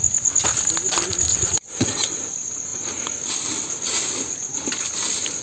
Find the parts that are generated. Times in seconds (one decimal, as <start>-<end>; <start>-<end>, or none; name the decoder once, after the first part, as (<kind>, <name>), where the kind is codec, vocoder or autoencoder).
1.3-2.2 (vocoder, WaveNeXt)